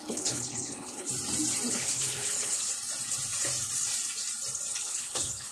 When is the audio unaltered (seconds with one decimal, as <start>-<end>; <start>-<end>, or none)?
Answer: 1.1-1.7; 2.7-4.8